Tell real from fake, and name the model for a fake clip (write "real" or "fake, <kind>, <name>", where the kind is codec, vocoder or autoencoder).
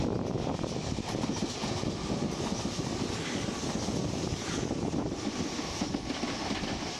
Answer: real